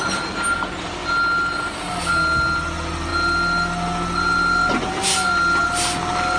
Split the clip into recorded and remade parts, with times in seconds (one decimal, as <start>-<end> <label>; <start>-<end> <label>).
0.0-6.4 recorded